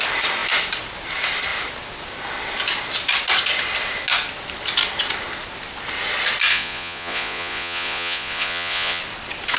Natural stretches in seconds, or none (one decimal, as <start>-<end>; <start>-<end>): 0.0-6.5; 9.0-9.6